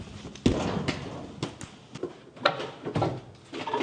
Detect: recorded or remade recorded